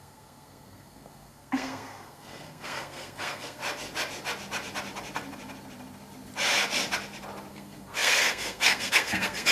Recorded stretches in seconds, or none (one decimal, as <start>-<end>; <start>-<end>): 3.6-7.5